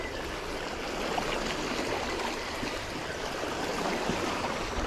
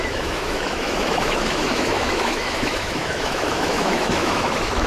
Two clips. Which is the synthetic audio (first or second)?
second